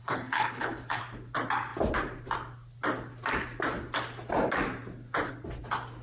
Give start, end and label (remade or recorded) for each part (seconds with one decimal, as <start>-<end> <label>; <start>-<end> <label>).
0.0-1.0 remade; 1.0-6.0 recorded